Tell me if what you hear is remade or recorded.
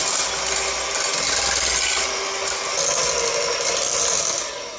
recorded